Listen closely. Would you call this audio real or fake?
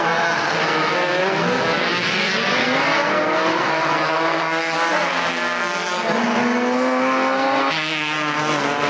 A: fake